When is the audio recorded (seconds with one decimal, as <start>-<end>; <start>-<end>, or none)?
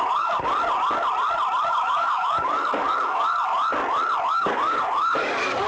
0.5-1.7; 3.5-4.3